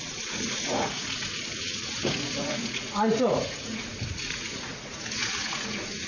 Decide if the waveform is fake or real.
fake